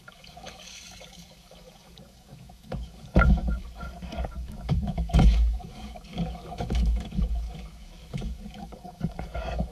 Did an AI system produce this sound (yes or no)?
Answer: yes